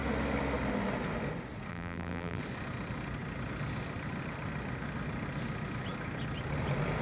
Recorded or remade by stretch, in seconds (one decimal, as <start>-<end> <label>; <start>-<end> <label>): 0.0-1.7 recorded; 1.7-2.4 remade; 2.4-7.0 recorded